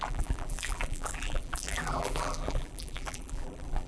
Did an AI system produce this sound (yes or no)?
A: yes